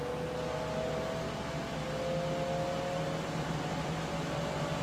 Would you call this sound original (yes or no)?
yes